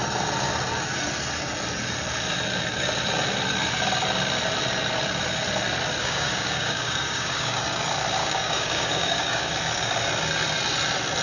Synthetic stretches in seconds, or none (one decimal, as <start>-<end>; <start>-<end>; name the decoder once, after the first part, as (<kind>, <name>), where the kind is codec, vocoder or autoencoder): 6.0-7.6 (codec, DAC); 8.2-9.5